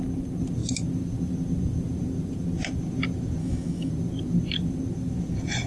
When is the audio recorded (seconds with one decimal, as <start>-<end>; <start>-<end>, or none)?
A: 0.0-3.4; 3.9-5.7